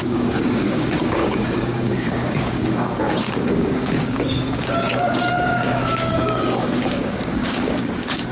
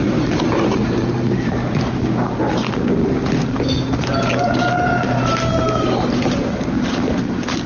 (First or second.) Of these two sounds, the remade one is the first